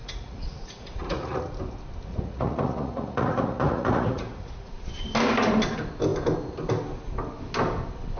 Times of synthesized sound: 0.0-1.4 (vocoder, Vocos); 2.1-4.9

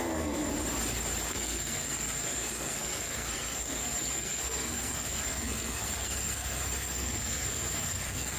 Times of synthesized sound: 0.0-0.5 (codec, SNAC); 1.3-8.4

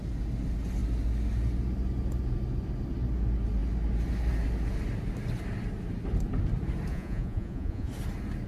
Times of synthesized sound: 6.9-7.9 (vocoder, Vocos)

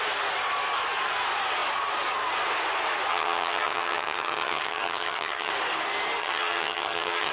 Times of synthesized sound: 3.1-5.5 (vocoder, HiFi-GAN); 6.2-7.3

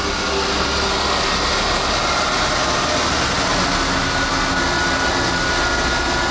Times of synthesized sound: none